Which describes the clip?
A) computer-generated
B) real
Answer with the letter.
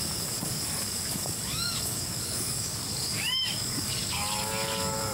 A